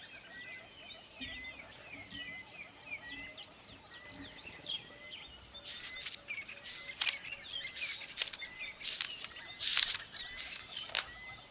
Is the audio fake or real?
real